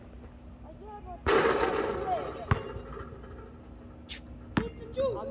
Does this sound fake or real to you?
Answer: real